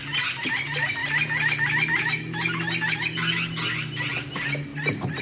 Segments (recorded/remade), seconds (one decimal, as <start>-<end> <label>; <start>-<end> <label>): 0.0-5.2 recorded